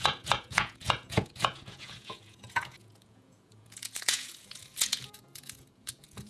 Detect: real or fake fake